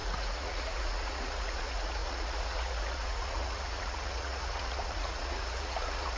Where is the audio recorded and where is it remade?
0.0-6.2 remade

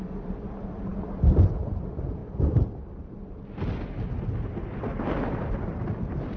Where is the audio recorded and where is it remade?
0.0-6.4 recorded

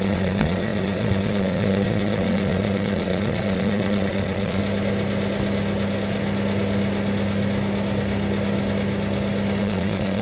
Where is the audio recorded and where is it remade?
0.0-4.6 remade; 4.6-9.6 recorded; 9.6-10.2 remade

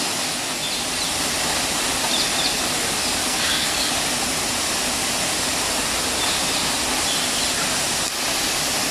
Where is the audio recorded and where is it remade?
0.0-3.2 recorded; 3.2-3.9 remade; 3.9-8.9 recorded

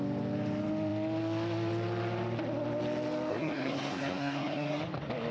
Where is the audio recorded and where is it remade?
0.0-3.3 recorded; 3.3-4.8 remade; 4.8-5.3 recorded

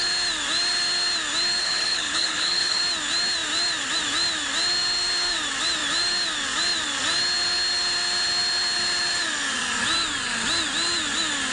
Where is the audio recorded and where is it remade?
0.0-1.6 recorded; 1.6-2.8 remade; 2.8-11.5 recorded

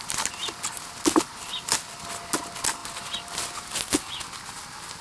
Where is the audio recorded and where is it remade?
0.0-5.0 recorded

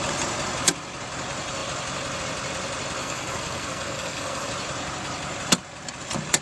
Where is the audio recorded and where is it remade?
0.0-3.0 recorded; 3.0-4.5 remade; 4.5-6.4 recorded